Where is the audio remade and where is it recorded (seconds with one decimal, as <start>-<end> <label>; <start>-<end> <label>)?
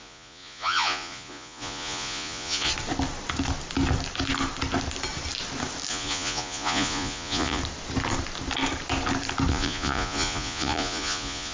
0.0-2.7 remade; 2.7-5.9 recorded; 5.9-7.6 remade; 7.6-9.5 recorded; 9.5-11.5 remade